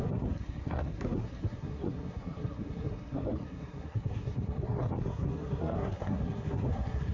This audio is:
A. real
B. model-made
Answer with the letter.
B